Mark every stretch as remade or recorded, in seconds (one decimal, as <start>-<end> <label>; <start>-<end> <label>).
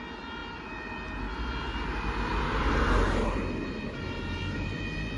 0.0-2.3 recorded; 2.3-4.8 remade; 4.8-5.2 recorded